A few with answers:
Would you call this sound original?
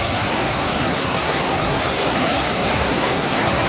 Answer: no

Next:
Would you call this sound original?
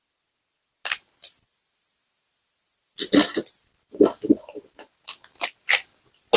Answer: yes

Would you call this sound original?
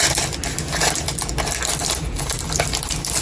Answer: yes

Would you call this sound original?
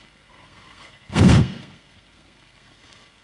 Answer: no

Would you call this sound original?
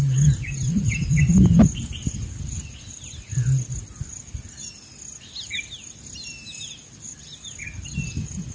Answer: yes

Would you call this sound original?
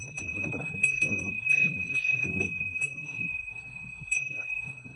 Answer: no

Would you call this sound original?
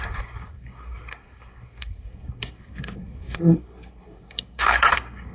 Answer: no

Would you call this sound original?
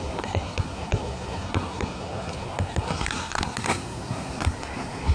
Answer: no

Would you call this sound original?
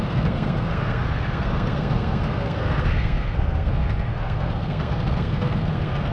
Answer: no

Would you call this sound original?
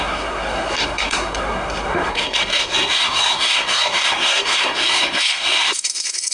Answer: no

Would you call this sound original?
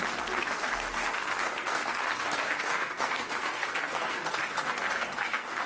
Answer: no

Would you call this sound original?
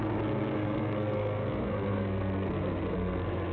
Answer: no